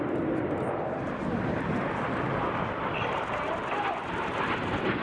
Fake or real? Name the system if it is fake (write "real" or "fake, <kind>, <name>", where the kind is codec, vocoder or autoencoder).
real